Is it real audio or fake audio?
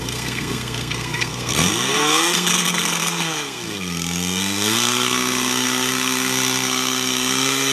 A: fake